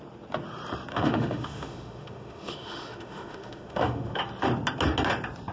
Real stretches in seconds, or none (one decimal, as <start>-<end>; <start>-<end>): 0.0-0.9; 4.2-5.5